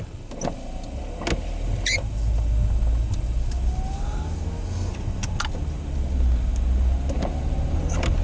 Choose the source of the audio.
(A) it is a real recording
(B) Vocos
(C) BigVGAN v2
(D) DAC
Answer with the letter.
A